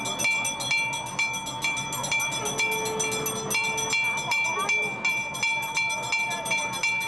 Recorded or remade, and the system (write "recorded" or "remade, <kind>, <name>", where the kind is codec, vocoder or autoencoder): recorded